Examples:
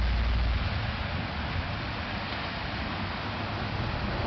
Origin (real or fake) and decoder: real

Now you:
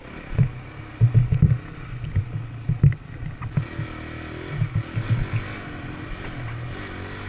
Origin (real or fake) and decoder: real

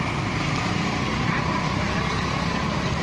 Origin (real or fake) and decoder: fake, vocoder, BigVGAN v2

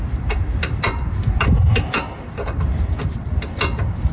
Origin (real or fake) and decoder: real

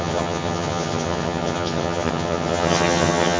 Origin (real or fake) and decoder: fake, vocoder, HiFi-GAN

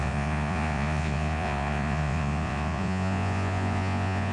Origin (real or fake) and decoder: fake, vocoder, Vocos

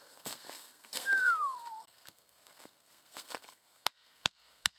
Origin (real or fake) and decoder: fake, codec, SNAC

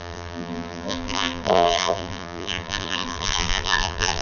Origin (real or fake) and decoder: fake, vocoder, BigVGAN v2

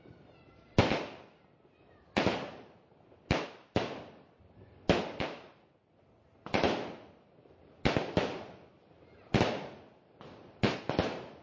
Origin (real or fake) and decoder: real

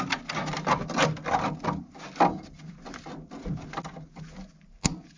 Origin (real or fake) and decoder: real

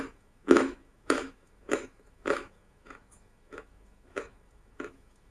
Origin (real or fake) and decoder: fake, autoencoder, DAC-VAE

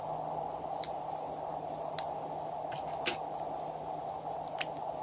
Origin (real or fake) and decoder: real